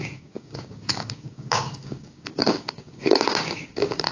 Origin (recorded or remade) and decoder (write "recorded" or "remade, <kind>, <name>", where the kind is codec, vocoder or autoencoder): remade, codec, DAC